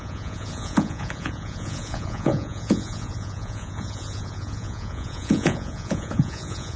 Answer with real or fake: fake